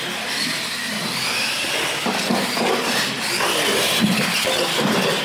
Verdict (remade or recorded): recorded